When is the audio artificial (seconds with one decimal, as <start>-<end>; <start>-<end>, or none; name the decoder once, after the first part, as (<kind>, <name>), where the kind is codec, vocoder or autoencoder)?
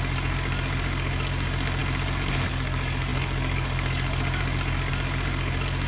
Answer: 0.0-1.8 (codec, DAC); 2.5-5.9